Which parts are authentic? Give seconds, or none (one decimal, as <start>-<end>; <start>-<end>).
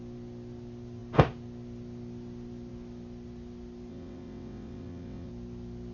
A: 0.0-3.9; 5.3-5.9